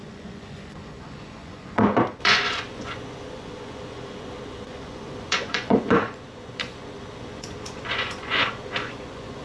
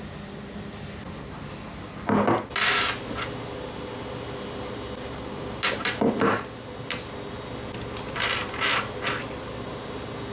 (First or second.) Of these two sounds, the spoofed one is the first